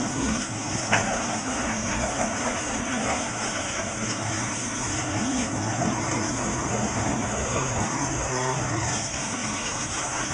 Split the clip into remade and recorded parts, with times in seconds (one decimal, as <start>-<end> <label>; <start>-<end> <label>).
0.0-10.3 remade